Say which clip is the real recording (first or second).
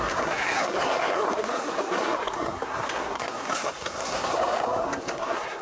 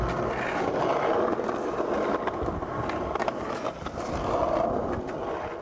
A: second